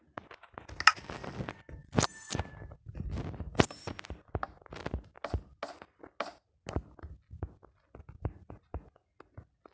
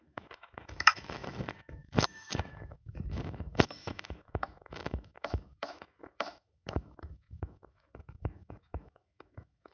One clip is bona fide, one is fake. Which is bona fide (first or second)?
first